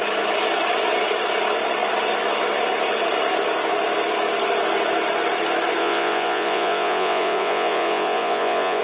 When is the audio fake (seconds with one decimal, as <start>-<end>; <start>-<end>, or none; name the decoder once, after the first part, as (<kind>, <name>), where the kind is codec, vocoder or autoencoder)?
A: 5.8-8.8 (vocoder, Vocos)